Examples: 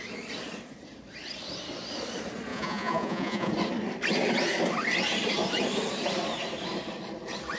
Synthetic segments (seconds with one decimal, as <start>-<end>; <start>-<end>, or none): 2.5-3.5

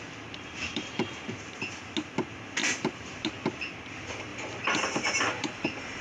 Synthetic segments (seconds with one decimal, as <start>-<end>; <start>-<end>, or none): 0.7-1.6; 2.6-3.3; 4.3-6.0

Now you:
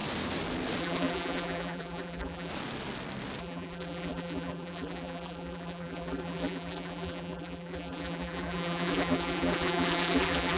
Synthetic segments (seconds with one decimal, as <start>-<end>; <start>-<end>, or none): 0.8-2.5; 3.4-10.6

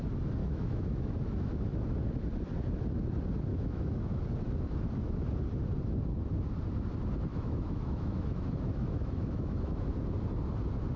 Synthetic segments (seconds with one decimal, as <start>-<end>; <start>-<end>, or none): 0.4-1.5; 3.5-4.2; 7.3-9.9

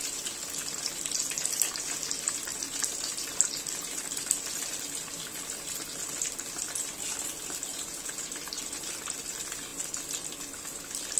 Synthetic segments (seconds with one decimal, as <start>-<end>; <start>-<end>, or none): 7.7-8.3

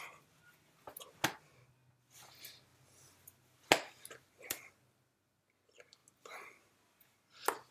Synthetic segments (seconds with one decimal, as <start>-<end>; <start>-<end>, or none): none